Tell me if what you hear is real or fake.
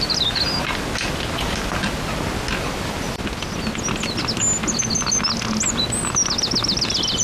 real